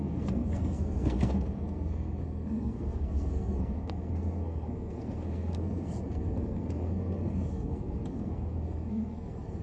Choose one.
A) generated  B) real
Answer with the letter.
A